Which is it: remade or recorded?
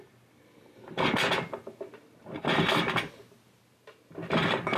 recorded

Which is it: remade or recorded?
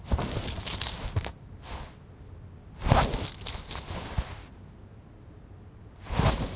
recorded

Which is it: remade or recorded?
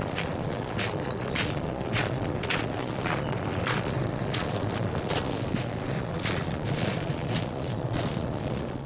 remade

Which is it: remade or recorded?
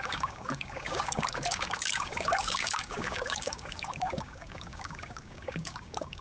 remade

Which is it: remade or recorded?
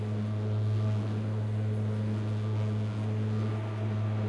recorded